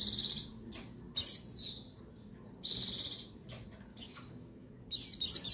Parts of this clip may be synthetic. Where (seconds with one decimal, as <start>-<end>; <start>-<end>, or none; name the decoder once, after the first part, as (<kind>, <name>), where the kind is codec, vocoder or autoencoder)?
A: 3.9-4.8 (codec, DAC)